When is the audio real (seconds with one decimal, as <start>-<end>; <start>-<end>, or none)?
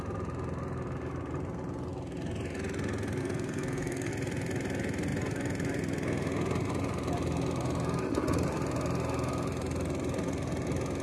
0.0-3.2; 4.1-11.0